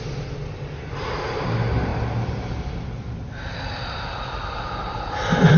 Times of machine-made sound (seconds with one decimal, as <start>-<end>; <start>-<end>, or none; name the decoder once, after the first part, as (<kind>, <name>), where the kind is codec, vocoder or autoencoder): none